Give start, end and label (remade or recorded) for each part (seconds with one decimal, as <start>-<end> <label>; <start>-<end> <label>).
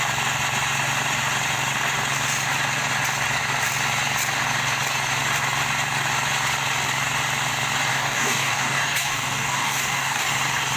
0.0-7.9 recorded; 7.9-10.3 remade; 10.3-10.8 recorded